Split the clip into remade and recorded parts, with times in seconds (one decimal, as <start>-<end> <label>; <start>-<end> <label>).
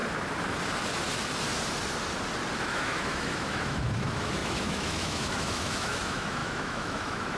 0.0-2.6 recorded; 2.6-7.4 remade